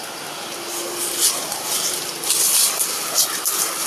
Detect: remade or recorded recorded